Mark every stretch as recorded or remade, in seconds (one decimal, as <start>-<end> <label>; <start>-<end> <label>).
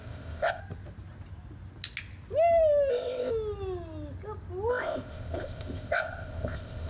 0.0-0.6 remade; 0.6-2.9 recorded; 2.9-3.3 remade; 3.3-4.7 recorded; 4.7-6.9 remade